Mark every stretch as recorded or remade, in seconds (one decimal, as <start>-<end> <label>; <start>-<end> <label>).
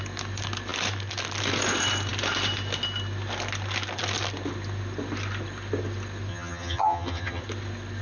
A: 0.0-6.3 recorded; 6.3-7.4 remade; 7.4-8.0 recorded